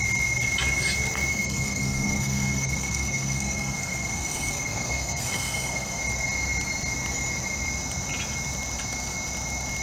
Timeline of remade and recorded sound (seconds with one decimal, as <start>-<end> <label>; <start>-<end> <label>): 0.0-1.3 recorded; 1.3-6.0 remade; 6.0-9.8 recorded